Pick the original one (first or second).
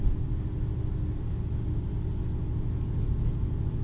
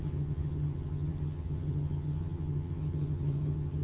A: first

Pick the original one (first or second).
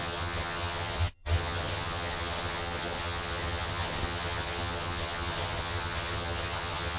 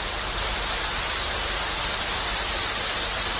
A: second